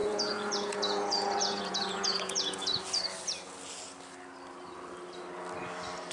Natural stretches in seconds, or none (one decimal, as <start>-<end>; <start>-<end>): 2.8-6.1